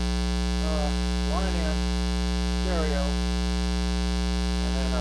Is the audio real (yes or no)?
yes